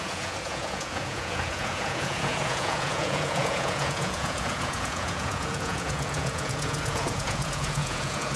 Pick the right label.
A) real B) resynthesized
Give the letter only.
B